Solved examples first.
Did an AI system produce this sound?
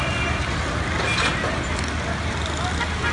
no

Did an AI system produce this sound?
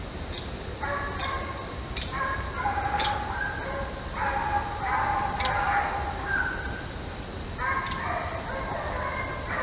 no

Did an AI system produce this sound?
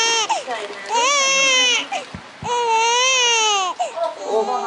no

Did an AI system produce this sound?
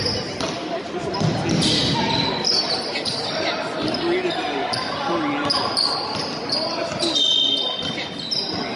no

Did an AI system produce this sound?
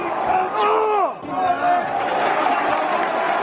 no